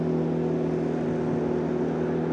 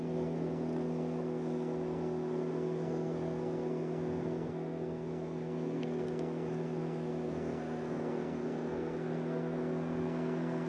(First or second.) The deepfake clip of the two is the second